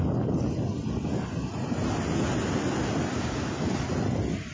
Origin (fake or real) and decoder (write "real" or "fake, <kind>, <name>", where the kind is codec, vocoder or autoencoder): real